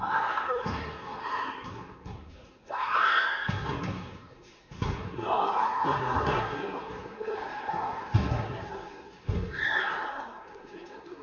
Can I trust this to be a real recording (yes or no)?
no